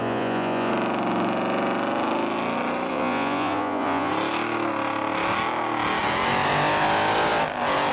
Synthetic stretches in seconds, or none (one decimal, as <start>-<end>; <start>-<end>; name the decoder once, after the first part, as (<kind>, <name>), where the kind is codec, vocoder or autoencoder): 0.0-0.7 (vocoder, Vocos); 2.9-4.1